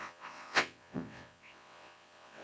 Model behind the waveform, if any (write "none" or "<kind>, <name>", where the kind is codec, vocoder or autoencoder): vocoder, WaveNeXt